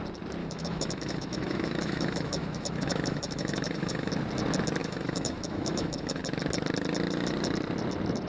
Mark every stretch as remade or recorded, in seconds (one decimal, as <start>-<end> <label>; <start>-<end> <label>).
0.0-0.4 recorded; 0.4-4.1 remade; 4.1-4.8 recorded; 4.8-6.2 remade; 6.2-8.3 recorded